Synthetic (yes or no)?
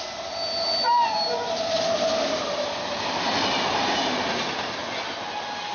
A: no